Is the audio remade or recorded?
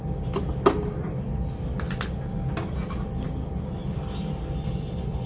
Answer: recorded